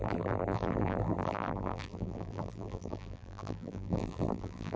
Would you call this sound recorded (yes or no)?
no